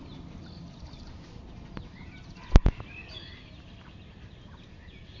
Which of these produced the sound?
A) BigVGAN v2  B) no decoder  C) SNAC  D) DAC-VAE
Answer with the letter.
B